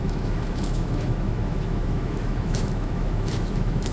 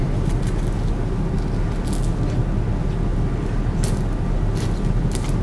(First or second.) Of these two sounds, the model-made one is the first